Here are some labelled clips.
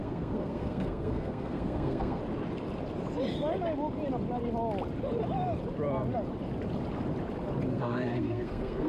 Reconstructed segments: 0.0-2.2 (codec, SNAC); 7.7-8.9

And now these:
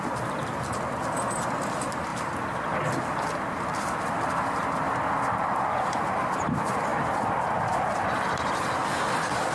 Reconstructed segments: none